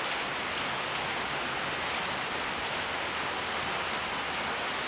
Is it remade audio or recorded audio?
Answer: recorded